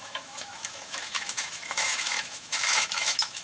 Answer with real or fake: fake